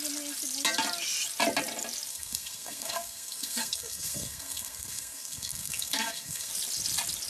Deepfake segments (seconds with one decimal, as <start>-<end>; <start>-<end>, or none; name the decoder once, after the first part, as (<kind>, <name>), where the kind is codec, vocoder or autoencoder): 2.1-6.5 (codec, SNAC)